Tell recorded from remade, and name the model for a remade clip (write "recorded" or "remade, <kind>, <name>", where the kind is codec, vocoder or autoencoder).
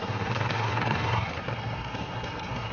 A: remade, codec, SNAC